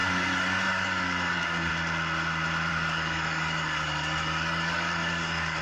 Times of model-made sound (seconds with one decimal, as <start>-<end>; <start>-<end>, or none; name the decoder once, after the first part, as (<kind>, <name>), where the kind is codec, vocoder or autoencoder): 0.0-1.7 (codec, DAC); 2.7-5.6